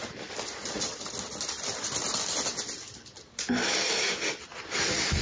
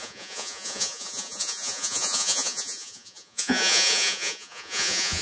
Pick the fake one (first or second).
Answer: second